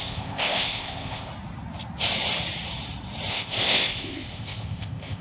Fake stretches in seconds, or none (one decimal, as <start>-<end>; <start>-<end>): 0.0-1.3; 3.3-5.2